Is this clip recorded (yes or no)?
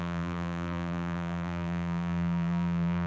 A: no